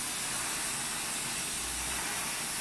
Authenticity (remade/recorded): recorded